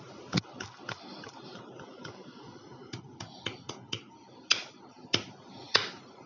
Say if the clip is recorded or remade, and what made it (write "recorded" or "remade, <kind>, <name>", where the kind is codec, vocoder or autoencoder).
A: recorded